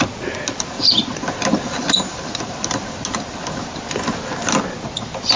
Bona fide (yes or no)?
yes